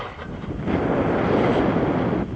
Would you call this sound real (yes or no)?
yes